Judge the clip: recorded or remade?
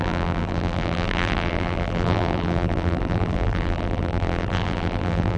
remade